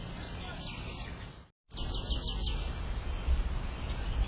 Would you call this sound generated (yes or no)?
no